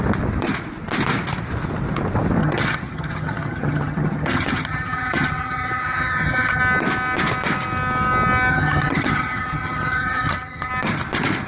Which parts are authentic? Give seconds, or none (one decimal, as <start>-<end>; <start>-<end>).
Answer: 0.0-2.4; 6.6-8.5; 10.7-11.5